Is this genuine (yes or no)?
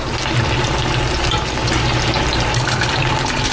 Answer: yes